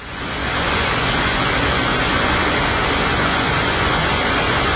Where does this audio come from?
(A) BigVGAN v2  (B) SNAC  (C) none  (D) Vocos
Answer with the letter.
D